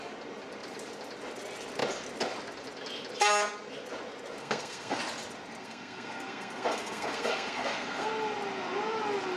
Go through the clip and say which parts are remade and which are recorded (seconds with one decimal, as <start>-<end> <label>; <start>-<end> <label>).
0.0-4.4 recorded; 4.4-5.0 remade; 5.0-5.6 recorded; 5.6-8.1 remade; 8.1-9.4 recorded